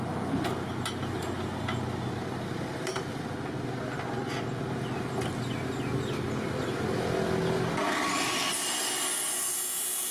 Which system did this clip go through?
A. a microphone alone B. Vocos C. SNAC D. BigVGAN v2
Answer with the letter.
A